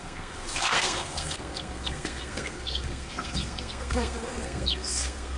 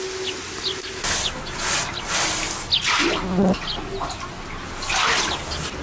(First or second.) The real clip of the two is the second